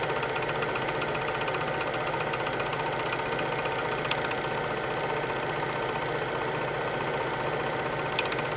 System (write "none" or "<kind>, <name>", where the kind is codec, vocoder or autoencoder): none